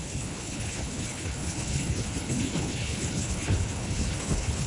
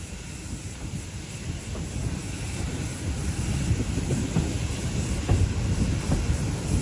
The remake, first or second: first